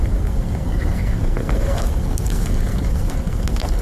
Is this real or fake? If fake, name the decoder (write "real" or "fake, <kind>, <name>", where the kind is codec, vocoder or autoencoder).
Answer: fake, codec, SNAC